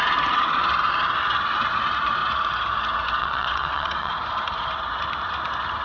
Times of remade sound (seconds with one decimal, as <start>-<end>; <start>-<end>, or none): 3.2-4.1

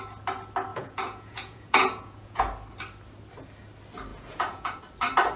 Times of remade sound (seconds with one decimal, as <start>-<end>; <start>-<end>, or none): 0.7-2.4; 4.1-4.8

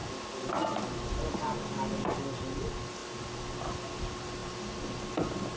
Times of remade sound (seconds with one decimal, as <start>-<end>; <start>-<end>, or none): none